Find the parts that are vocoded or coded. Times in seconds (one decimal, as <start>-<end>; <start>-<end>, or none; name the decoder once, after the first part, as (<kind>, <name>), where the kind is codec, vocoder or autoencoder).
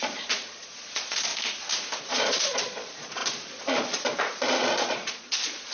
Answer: 0.0-1.3 (vocoder, Vocos); 2.0-5.7